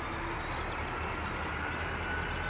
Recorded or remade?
recorded